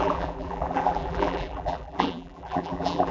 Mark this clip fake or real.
fake